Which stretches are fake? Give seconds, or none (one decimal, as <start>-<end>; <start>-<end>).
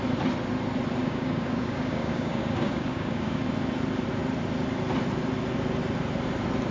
1.0-3.4